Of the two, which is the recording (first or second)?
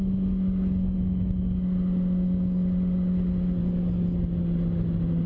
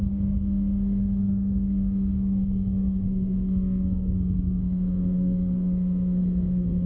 first